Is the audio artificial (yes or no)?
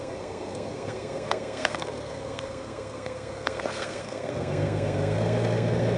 yes